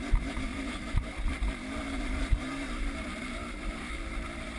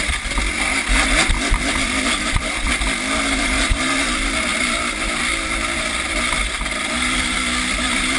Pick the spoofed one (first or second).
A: first